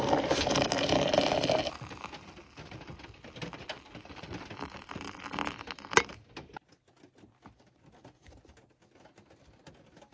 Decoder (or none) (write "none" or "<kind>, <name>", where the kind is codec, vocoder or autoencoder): none